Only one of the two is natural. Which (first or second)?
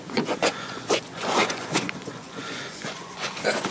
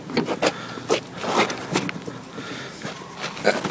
second